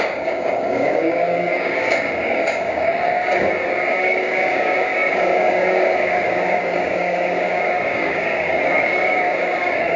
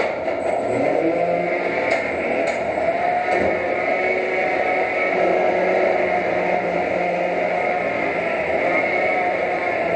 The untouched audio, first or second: second